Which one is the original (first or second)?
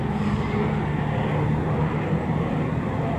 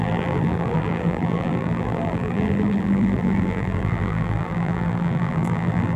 first